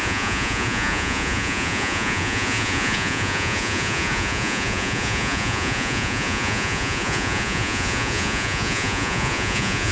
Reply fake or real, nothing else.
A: fake